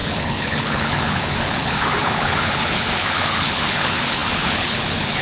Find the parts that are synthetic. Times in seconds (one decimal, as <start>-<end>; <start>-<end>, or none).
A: 0.0-5.2